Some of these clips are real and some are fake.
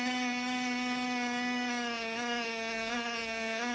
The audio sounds fake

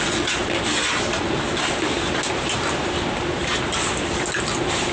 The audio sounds real